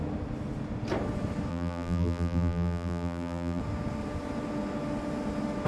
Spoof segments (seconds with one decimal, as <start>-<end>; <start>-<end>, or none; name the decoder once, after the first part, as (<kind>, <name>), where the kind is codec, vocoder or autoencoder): 1.5-3.6 (vocoder, BigVGAN v2)